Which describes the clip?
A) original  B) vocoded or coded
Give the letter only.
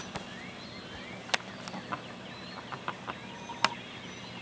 A